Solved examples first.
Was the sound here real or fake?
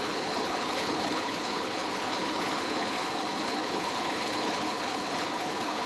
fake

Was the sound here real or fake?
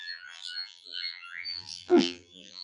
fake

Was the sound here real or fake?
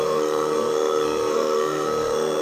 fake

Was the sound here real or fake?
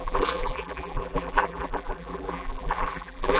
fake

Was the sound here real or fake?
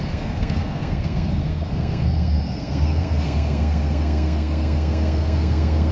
fake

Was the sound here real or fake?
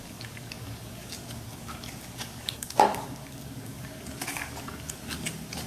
fake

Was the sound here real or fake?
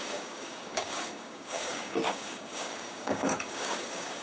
fake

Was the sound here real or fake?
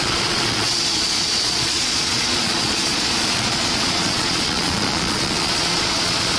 fake